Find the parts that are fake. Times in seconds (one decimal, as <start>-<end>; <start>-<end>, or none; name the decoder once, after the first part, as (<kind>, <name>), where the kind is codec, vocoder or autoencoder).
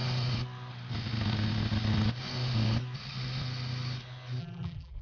4.4-5.0 (vocoder, BigVGAN v2)